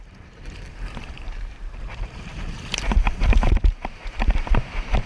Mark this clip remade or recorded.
remade